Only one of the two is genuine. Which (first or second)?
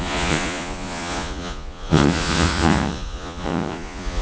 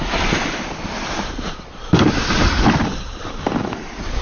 second